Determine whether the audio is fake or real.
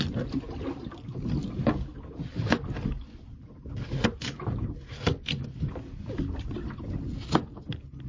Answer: real